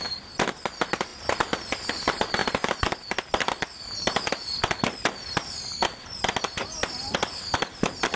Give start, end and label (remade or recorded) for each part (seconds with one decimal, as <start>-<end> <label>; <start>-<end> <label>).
0.0-8.2 recorded